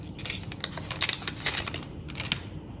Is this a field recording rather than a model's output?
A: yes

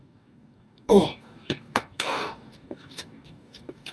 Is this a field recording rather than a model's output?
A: no